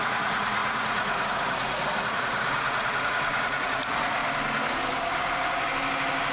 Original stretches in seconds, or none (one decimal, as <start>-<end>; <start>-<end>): 4.2-6.3